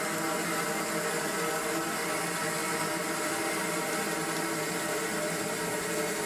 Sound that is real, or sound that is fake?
real